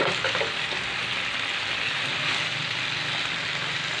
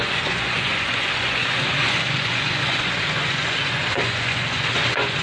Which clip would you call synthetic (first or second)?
second